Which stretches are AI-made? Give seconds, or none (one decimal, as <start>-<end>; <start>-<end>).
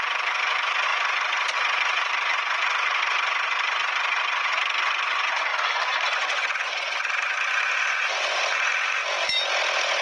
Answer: 5.5-8.4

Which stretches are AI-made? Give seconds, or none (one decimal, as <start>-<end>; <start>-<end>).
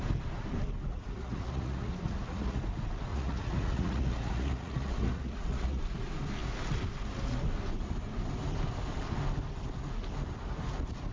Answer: 0.9-2.6; 3.1-5.8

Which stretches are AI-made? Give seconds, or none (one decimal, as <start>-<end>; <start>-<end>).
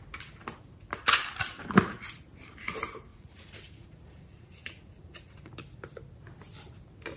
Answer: 3.1-5.5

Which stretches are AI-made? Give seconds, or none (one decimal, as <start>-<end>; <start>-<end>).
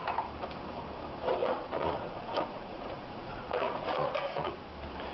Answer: 1.4-4.5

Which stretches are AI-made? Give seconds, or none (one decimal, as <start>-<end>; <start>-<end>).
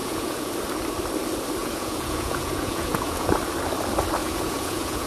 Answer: 0.0-0.5; 1.6-3.3; 4.2-5.1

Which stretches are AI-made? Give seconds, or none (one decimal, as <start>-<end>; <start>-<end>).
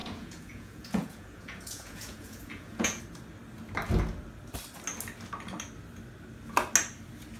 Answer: 0.0-3.0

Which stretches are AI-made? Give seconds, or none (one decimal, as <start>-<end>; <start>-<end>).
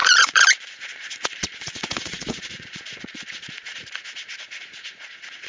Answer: 0.0-5.5